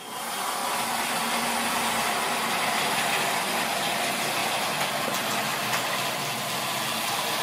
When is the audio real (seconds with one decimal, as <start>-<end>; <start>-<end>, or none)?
0.0-7.4